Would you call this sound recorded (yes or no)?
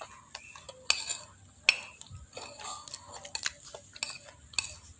yes